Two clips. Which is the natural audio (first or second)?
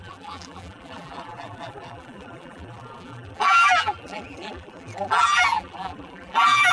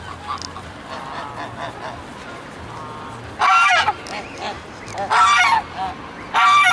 second